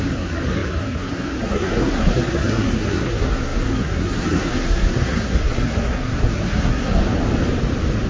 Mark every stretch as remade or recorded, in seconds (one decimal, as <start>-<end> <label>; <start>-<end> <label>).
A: 0.0-7.0 remade; 7.0-8.1 recorded